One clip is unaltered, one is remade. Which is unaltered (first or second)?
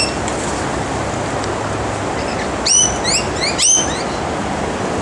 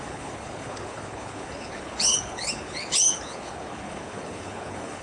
first